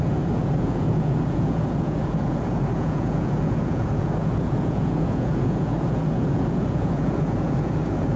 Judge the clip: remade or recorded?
remade